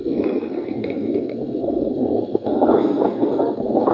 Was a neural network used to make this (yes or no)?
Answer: yes